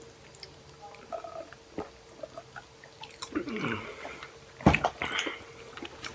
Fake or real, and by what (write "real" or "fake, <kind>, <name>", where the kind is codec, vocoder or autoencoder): real